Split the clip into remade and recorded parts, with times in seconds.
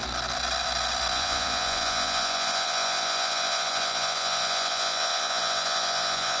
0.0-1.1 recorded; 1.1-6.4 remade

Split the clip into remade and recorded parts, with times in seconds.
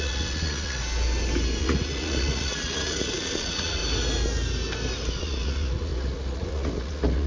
0.0-0.8 remade; 0.8-1.6 recorded; 1.6-3.8 remade; 3.8-5.2 recorded; 5.2-7.3 remade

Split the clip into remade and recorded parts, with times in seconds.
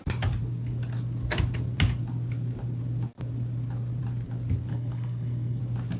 0.0-4.7 recorded; 4.7-5.6 remade; 5.6-6.0 recorded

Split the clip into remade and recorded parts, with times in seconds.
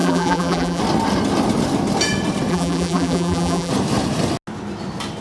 0.0-0.8 remade; 0.8-2.5 recorded; 2.5-3.7 remade; 3.7-5.2 recorded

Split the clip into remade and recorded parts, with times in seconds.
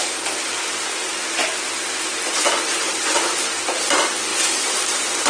0.0-5.3 recorded